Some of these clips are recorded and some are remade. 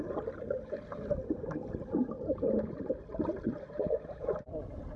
recorded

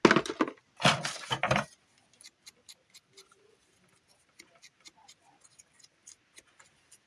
recorded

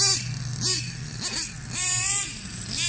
recorded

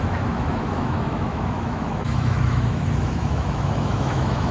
remade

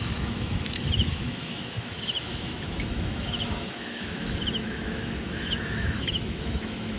remade